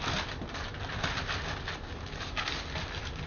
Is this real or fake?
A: real